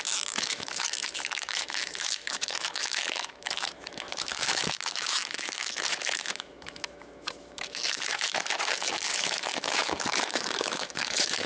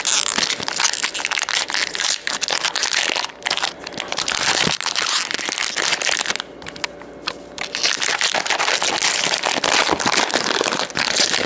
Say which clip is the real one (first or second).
second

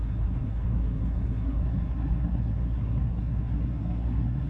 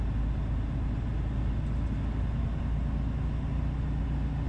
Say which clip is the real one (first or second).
second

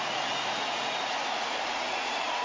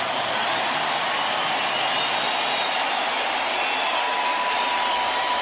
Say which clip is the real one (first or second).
second